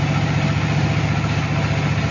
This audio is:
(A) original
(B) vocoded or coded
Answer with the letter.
A